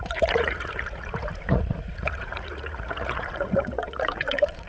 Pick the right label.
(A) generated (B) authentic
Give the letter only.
A